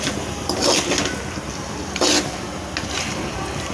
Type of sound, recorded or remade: recorded